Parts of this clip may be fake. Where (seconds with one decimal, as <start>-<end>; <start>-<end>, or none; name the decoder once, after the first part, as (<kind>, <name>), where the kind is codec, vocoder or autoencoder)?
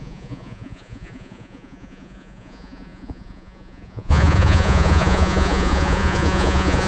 0.0-6.9 (vocoder, Vocos)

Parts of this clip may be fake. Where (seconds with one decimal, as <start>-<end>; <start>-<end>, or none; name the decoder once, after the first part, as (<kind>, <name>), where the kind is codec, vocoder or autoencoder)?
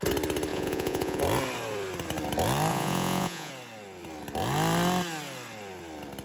0.5-1.2 (vocoder, Vocos); 2.7-3.5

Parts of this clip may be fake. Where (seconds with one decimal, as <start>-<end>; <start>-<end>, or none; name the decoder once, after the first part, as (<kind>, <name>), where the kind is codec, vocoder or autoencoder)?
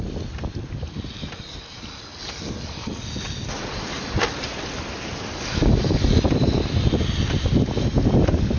none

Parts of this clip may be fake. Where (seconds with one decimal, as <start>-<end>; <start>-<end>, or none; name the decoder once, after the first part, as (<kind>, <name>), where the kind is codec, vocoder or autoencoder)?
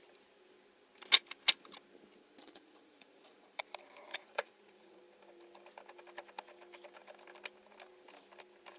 2.4-3.6 (vocoder, Vocos); 4.1-5.0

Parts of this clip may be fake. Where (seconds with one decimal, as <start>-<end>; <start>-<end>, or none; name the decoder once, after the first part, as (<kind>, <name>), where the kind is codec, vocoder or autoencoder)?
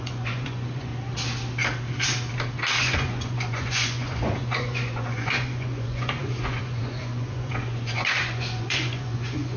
0.0-0.9 (vocoder, Vocos); 2.8-9.6